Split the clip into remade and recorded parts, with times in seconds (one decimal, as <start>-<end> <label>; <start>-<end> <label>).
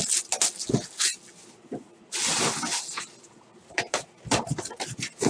0.0-5.3 recorded